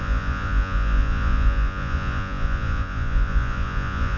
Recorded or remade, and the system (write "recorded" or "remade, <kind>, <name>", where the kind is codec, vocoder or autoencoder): remade, vocoder, Vocos